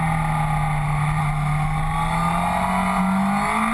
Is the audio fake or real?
real